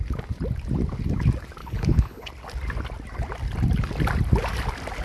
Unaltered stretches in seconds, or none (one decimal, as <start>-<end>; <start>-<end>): 0.0-1.6; 2.3-5.0